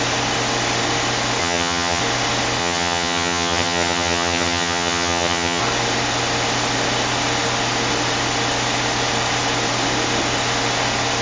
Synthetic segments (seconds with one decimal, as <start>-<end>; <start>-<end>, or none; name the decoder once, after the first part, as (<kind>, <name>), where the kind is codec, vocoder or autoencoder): 1.4-2.0 (vocoder, HiFi-GAN); 2.6-5.6